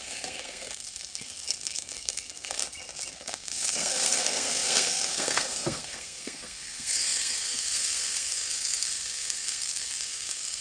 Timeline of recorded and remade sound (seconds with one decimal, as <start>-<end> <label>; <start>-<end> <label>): 0.0-2.6 remade; 2.6-3.1 recorded; 3.1-10.6 remade